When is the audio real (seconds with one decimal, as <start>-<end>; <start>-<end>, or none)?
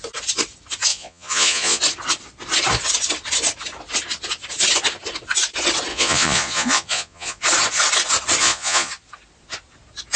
0.0-0.9; 1.8-5.9; 7.4-8.4; 8.9-10.2